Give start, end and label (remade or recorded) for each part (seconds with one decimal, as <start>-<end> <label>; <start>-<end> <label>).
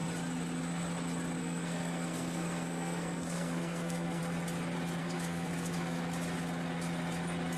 0.0-1.4 recorded; 1.4-4.2 remade; 4.2-5.0 recorded; 5.0-6.0 remade; 6.0-7.6 recorded